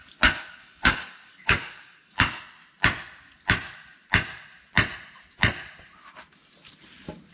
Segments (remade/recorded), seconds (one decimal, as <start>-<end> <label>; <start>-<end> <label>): 0.0-0.6 recorded; 0.6-2.4 remade; 2.4-7.3 recorded